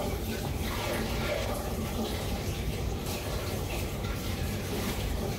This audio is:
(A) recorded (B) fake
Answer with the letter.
B